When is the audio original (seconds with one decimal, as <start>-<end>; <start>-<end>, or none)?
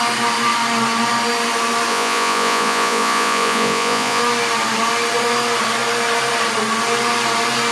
0.0-1.9; 4.2-7.7